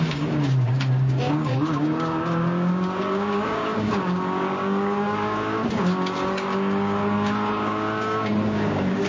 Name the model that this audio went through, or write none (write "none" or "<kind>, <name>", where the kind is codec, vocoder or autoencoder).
codec, DAC